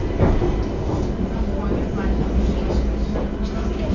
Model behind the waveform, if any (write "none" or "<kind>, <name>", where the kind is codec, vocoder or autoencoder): none